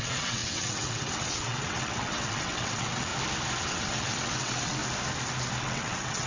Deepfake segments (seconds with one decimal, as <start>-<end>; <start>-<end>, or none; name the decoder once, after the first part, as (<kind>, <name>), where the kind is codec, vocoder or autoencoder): 0.0-3.1 (vocoder, WaveNeXt); 3.6-4.8; 5.6-6.3